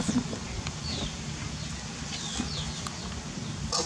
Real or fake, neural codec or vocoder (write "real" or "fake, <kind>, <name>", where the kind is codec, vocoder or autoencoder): real